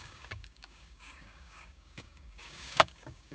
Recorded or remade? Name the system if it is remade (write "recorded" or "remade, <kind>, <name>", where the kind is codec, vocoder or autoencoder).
remade, codec, DAC